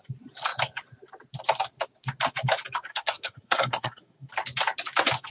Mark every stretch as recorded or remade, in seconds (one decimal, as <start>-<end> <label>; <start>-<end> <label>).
0.0-2.9 recorded; 2.9-4.3 remade; 4.3-5.3 recorded

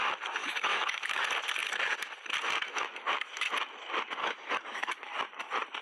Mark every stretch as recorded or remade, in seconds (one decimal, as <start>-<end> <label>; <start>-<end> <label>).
0.0-0.4 recorded; 0.4-1.2 remade; 1.2-4.2 recorded; 4.2-4.9 remade; 4.9-5.8 recorded

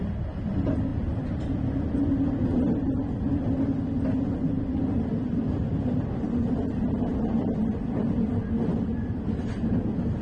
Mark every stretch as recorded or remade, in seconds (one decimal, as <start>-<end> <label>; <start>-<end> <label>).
0.0-10.2 recorded

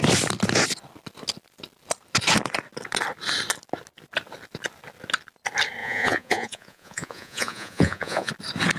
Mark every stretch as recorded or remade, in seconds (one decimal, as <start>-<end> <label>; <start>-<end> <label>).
0.0-5.8 recorded; 5.8-8.3 remade; 8.3-8.8 recorded

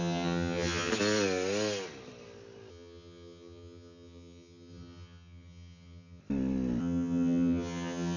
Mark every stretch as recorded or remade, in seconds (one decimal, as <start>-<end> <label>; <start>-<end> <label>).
0.0-0.9 remade; 0.9-2.7 recorded; 2.7-6.2 remade; 6.2-6.8 recorded; 6.8-8.2 remade

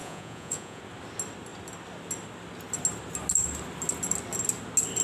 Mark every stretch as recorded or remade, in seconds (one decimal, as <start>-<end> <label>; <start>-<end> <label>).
0.0-0.8 remade; 0.8-5.0 recorded

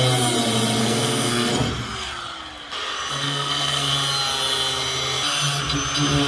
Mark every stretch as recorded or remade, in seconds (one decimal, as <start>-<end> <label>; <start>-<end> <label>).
0.0-0.8 recorded; 0.8-1.5 remade; 1.5-2.9 recorded; 2.9-3.9 remade; 3.9-6.3 recorded